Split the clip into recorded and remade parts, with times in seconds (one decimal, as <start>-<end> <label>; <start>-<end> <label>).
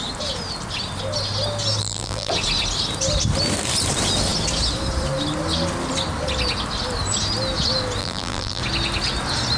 0.0-1.8 recorded; 1.8-2.3 remade; 2.3-8.0 recorded; 8.0-8.6 remade; 8.6-9.6 recorded